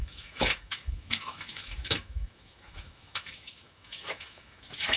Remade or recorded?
remade